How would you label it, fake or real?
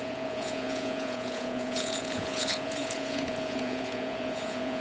fake